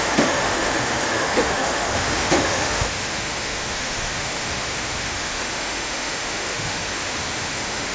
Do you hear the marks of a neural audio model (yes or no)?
yes